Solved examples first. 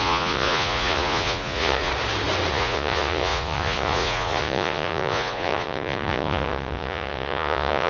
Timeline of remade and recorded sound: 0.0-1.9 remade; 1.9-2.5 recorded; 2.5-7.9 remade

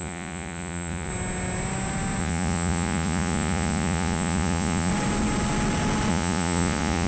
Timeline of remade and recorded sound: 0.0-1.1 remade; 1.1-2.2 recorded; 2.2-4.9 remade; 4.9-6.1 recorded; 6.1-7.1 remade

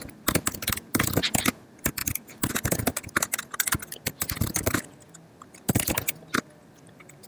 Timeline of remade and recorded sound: 0.0-7.3 recorded